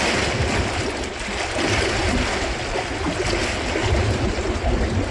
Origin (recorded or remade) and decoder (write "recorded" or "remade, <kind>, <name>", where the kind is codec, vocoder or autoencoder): recorded